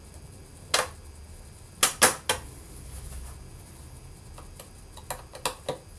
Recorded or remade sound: recorded